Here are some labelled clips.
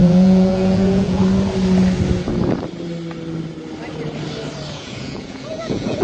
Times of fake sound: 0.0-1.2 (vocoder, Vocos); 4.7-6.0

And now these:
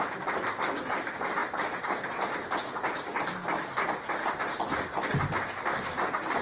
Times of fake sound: none

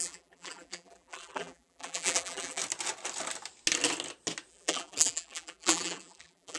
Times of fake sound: 0.0-2.6 (vocoder, BigVGAN v2); 4.5-6.6

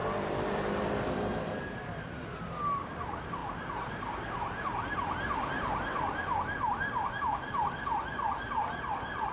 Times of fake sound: none

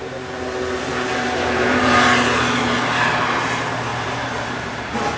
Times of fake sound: 0.9-2.1 (vocoder, BigVGAN v2); 3.9-5.2